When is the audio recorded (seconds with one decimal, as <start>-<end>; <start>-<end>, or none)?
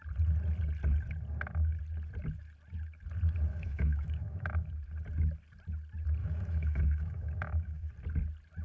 0.0-3.5; 4.7-6.2; 7.9-8.6